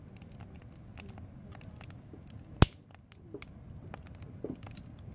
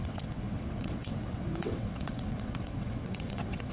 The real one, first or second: first